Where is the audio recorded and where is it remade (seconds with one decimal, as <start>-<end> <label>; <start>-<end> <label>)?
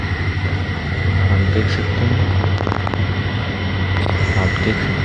0.0-5.0 recorded